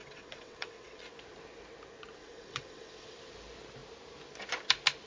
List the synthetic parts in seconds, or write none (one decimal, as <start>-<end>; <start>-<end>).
0.0-1.0; 2.2-3.2